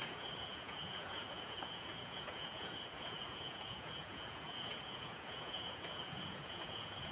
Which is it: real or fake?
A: fake